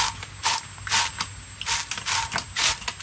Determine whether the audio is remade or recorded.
recorded